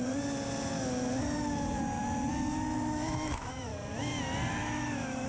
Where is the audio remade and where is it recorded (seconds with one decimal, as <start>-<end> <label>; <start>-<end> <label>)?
0.0-2.8 recorded; 2.8-3.7 remade; 3.7-4.5 recorded; 4.5-5.3 remade

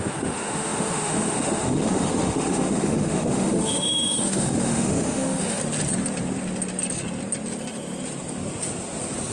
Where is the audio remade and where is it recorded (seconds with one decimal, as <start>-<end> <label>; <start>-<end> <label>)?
0.0-5.6 remade; 5.6-9.3 recorded

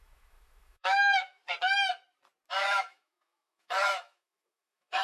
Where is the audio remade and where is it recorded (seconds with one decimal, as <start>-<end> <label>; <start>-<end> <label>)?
0.0-1.4 remade; 1.4-2.5 recorded; 2.5-5.0 remade

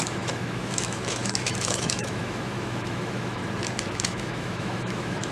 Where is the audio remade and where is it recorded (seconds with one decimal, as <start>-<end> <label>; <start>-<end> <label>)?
0.0-3.4 remade; 3.4-3.9 recorded; 3.9-5.3 remade

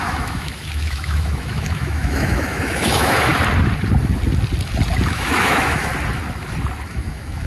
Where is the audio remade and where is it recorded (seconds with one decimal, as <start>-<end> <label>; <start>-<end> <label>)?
0.0-3.3 remade; 3.3-5.1 recorded; 5.1-5.9 remade; 5.9-6.9 recorded; 6.9-7.5 remade

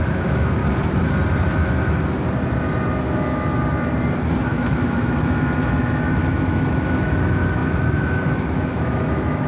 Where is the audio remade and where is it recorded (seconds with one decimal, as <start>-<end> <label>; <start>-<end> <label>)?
0.0-0.6 remade; 0.6-4.4 recorded; 4.4-9.5 remade

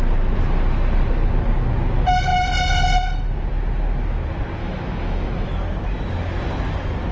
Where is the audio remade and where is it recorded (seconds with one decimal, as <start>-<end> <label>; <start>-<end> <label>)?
0.0-4.6 recorded; 4.6-5.5 remade; 5.5-7.1 recorded

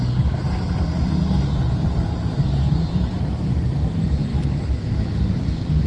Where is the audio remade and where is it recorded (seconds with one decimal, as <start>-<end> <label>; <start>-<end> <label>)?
0.0-4.3 recorded; 4.3-5.2 remade; 5.2-5.9 recorded